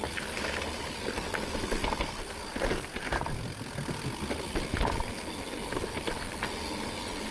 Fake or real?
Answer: real